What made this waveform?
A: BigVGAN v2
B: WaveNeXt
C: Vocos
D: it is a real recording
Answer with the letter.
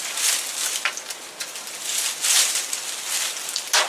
D